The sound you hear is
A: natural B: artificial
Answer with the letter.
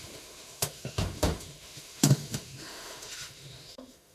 B